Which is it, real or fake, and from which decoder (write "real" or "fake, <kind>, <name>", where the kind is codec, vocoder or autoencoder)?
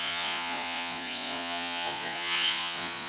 fake, vocoder, Vocos